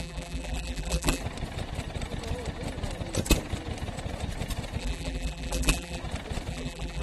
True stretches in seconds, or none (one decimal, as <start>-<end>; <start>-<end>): 1.2-4.8; 6.0-6.5